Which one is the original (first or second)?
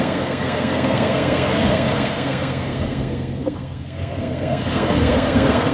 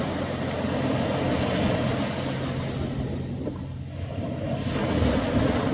second